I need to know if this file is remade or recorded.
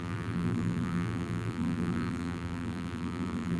remade